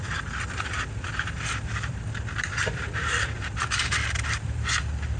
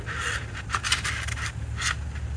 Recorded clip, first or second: second